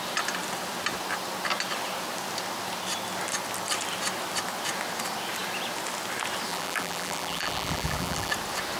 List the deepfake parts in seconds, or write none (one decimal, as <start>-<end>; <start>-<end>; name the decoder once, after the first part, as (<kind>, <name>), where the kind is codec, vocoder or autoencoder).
6.5-8.3 (vocoder, BigVGAN v2)